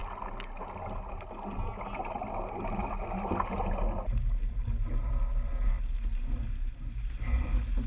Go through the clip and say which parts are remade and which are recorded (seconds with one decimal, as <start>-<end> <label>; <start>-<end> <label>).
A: 0.0-7.9 recorded